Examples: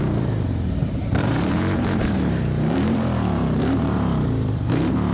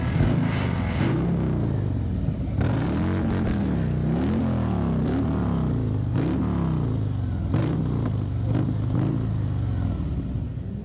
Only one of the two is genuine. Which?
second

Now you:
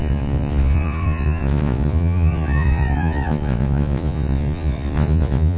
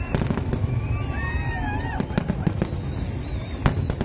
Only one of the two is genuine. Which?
second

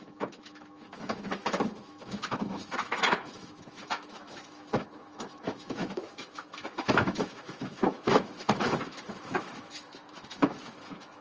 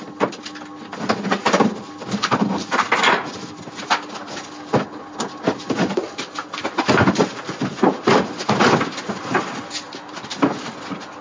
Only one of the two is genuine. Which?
second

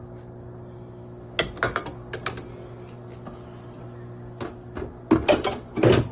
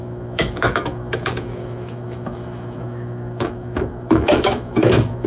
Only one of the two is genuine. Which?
first